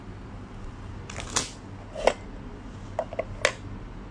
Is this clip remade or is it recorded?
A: recorded